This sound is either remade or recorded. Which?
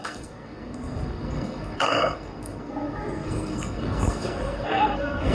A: remade